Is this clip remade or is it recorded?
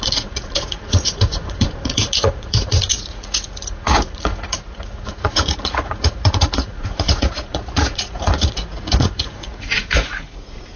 remade